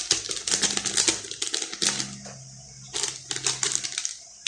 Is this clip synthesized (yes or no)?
no